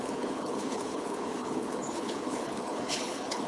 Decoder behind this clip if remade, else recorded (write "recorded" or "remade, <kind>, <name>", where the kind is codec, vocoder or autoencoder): remade, codec, HILCodec